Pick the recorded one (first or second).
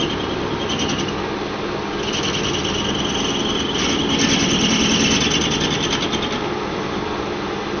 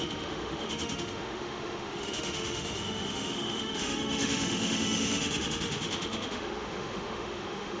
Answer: first